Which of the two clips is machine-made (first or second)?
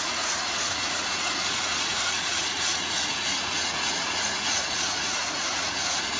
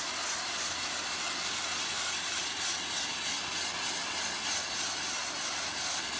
first